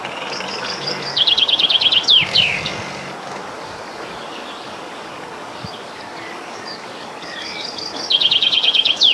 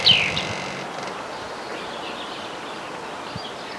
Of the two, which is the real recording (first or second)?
second